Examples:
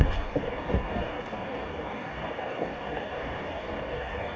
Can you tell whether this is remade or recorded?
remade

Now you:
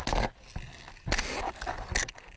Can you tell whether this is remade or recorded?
recorded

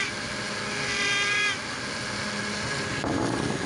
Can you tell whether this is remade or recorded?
recorded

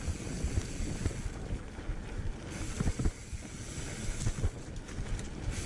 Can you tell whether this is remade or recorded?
recorded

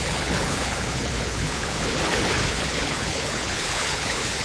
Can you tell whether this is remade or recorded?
remade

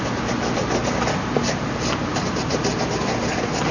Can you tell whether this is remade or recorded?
recorded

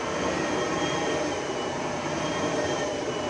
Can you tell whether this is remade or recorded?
remade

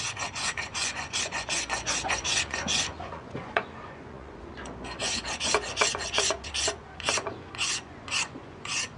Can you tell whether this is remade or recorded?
remade